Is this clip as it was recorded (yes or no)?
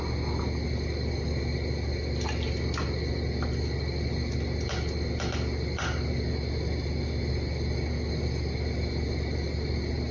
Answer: yes